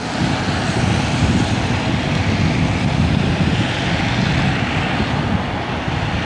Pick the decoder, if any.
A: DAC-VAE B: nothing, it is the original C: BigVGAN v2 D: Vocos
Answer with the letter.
B